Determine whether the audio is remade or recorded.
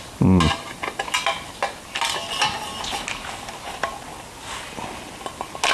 recorded